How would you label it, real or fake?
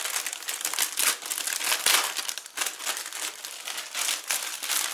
real